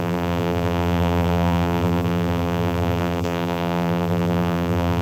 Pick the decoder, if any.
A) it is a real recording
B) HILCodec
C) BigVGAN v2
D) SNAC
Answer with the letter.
C